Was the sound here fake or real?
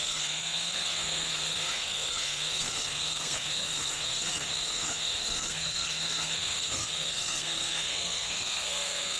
fake